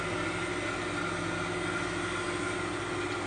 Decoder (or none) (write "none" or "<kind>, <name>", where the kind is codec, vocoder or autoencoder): none